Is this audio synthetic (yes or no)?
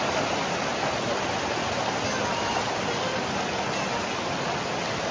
no